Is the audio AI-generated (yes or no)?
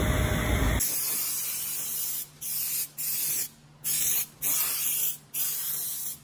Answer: no